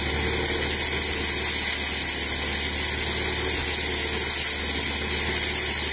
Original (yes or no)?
yes